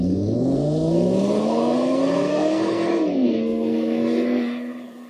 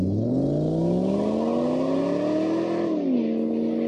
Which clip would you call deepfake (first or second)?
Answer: first